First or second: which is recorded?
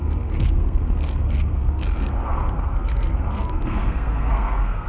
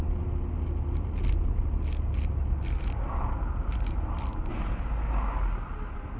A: second